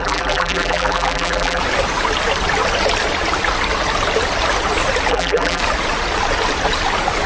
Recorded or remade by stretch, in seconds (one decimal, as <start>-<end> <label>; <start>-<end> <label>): 0.0-1.6 remade; 1.6-5.1 recorded; 5.1-5.6 remade; 5.6-7.3 recorded